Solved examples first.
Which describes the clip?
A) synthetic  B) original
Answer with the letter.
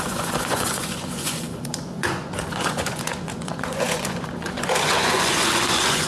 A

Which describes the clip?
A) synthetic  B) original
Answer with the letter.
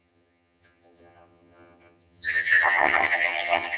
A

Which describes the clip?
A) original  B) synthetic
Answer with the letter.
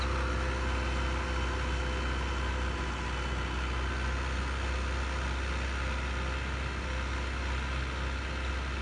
A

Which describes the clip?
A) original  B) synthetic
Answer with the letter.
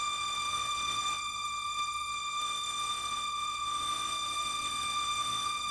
B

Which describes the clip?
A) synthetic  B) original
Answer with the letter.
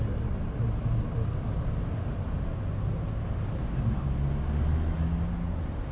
B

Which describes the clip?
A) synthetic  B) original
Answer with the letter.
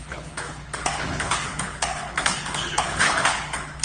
A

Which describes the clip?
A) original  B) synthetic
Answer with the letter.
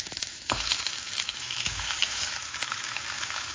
B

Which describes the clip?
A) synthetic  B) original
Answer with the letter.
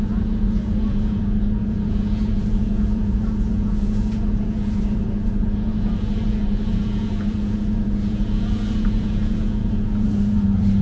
A